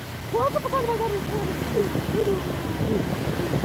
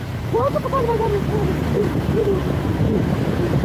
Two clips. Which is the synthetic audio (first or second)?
second